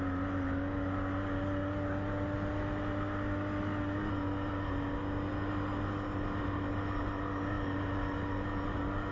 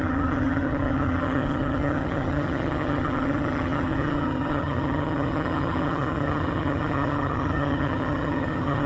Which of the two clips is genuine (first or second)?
first